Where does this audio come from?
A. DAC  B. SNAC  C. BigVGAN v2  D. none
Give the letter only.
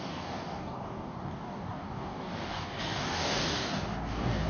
A